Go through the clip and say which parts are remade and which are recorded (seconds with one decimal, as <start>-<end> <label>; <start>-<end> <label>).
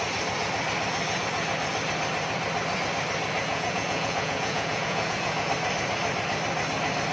0.0-3.5 recorded; 3.5-5.5 remade; 5.5-7.1 recorded